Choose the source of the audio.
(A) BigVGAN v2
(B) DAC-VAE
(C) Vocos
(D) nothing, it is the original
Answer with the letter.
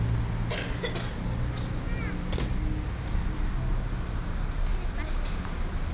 D